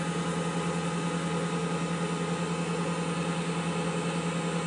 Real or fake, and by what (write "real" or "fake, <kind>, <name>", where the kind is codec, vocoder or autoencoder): real